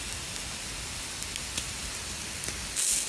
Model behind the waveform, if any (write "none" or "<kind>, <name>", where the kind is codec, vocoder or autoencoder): none